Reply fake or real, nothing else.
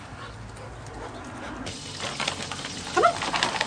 real